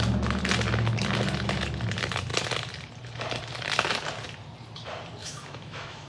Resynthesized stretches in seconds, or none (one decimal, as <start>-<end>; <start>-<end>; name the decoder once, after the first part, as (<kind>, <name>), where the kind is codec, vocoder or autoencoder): 5.2-6.1 (autoencoder, DAC-VAE)